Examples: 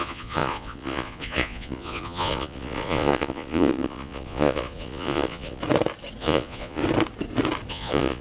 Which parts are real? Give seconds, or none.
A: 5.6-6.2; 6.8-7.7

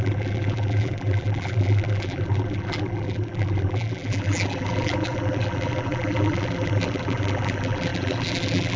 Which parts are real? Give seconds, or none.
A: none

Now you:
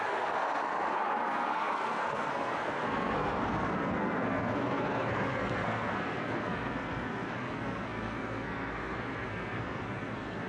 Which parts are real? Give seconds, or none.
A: none

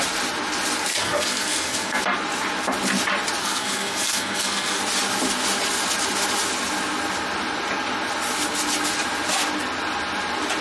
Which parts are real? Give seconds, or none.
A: 0.0-0.9; 2.0-3.4; 4.8-10.6

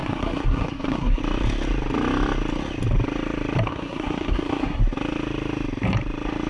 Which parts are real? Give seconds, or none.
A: 1.2-3.7; 4.8-6.5